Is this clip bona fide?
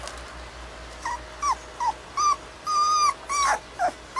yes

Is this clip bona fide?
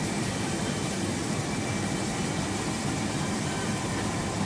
yes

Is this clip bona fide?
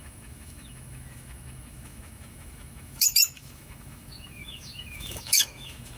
no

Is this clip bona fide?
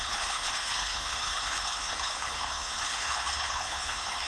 no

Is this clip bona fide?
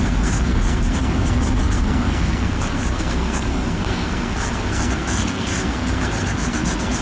no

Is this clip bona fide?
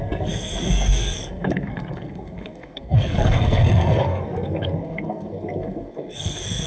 no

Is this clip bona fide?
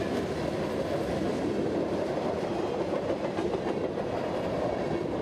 yes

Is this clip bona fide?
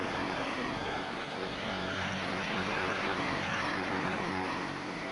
no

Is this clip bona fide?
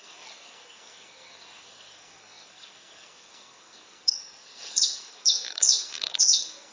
no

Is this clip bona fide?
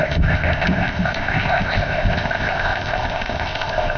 no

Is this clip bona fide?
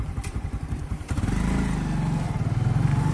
yes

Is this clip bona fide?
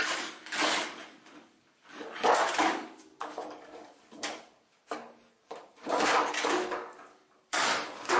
no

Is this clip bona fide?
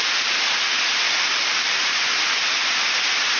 yes